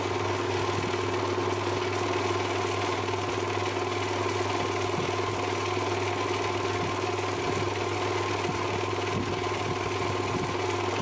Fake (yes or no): no